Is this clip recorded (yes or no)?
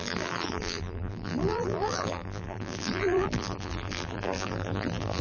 no